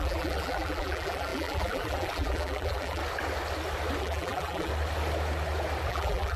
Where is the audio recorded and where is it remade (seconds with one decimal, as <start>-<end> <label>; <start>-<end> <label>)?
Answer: 0.0-3.0 remade; 3.0-4.0 recorded; 4.0-4.7 remade; 4.7-5.9 recorded; 5.9-6.4 remade